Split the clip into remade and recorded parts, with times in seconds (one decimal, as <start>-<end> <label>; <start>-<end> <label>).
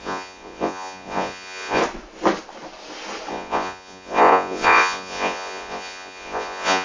0.0-1.8 remade; 1.8-3.3 recorded; 3.3-6.8 remade